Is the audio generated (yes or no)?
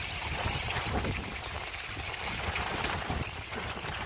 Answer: yes